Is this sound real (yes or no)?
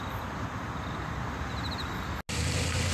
yes